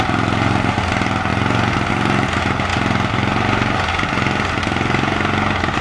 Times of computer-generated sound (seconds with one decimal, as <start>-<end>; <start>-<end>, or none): none